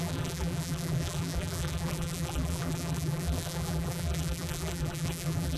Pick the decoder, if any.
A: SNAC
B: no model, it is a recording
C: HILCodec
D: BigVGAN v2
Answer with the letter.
D